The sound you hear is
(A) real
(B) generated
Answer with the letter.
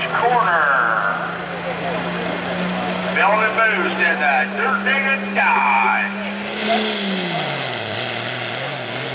A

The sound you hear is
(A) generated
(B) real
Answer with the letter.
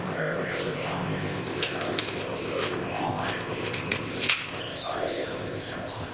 A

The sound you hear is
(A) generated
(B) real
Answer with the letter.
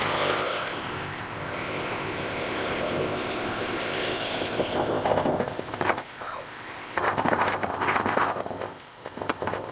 A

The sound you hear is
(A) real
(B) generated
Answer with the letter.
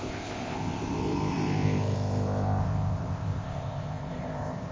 B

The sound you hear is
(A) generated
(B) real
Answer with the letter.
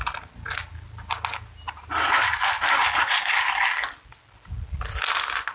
B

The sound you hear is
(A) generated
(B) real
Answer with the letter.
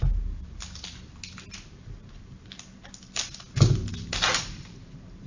B